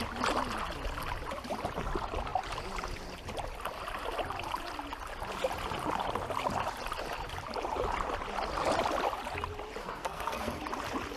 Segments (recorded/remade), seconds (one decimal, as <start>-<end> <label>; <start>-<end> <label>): 0.0-9.8 recorded; 9.8-10.6 remade; 10.6-11.2 recorded